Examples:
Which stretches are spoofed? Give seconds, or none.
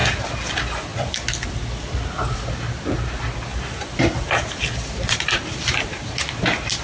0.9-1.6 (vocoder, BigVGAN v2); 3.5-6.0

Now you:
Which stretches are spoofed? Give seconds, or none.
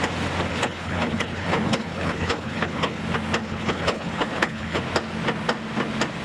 0.5-3.0 (codec, HILCodec); 3.4-4.8